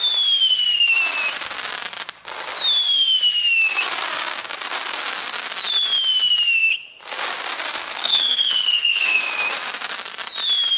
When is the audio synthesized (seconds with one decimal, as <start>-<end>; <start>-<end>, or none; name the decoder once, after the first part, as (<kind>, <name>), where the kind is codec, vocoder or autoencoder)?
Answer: 7.9-9.3 (codec, SNAC)